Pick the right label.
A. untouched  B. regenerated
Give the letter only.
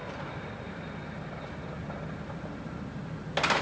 A